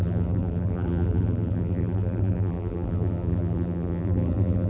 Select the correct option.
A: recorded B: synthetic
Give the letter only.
B